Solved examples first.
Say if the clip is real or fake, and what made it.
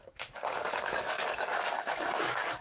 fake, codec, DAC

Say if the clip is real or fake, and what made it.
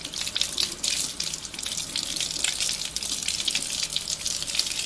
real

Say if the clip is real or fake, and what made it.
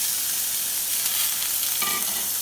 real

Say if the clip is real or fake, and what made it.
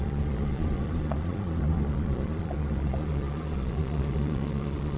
fake, vocoder, Vocos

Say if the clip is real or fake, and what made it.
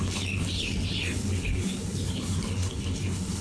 fake, codec, HILCodec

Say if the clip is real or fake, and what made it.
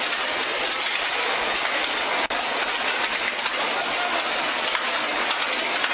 real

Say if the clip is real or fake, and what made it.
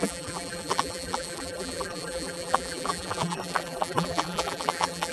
fake, vocoder, BigVGAN v2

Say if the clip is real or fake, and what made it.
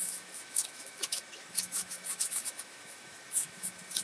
fake, autoencoder, DAC-VAE